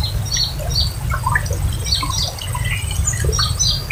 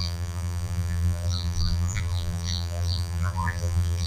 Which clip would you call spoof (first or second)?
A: second